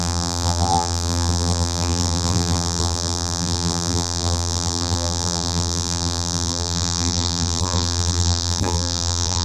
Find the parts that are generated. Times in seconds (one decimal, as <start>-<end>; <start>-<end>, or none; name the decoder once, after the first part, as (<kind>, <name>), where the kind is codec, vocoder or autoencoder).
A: 0.0-9.4 (vocoder, BigVGAN v2)